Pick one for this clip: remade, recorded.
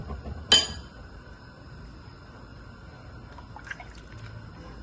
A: recorded